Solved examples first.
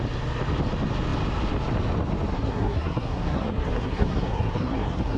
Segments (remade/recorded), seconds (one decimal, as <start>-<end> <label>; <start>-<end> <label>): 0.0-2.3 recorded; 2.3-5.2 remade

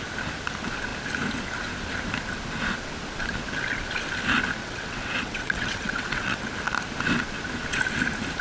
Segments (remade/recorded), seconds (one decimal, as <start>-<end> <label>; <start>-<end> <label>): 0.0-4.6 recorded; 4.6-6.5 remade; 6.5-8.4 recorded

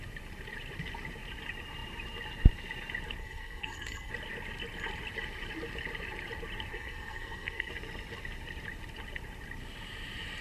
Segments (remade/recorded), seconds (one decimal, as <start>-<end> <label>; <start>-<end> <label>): 0.0-3.2 recorded; 3.2-4.1 remade; 4.1-6.7 recorded; 6.7-7.7 remade; 7.7-10.4 recorded

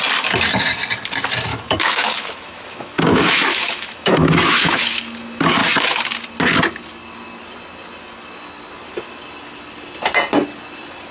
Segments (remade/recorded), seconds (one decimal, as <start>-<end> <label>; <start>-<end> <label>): 0.0-1.5 recorded; 1.5-5.0 remade; 5.0-11.1 recorded

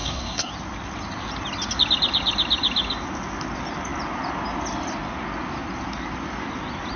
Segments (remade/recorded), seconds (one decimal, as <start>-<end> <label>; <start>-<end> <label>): 0.0-0.5 remade; 0.5-7.0 recorded

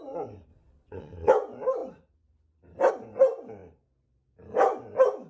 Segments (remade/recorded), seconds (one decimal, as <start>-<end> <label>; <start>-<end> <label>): 0.0-0.5 recorded; 0.5-1.3 remade; 1.3-5.3 recorded